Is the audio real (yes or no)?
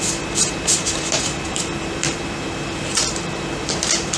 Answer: no